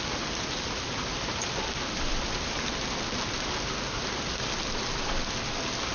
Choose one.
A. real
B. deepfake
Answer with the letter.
A